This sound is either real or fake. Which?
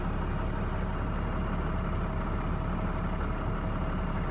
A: real